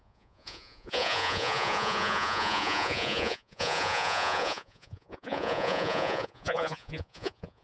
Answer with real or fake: fake